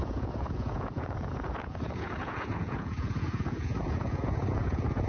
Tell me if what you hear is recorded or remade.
remade